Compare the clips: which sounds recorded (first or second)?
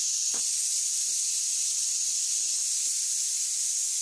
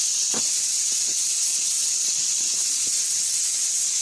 first